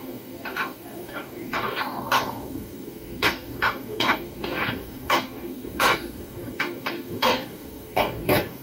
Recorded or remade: remade